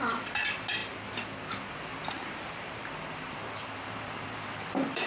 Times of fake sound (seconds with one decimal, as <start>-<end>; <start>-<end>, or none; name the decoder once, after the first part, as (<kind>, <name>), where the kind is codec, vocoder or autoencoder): 1.9-5.1 (vocoder, BigVGAN v2)